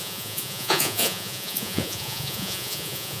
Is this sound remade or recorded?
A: remade